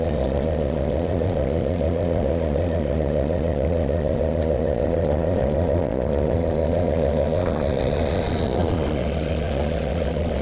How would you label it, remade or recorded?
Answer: remade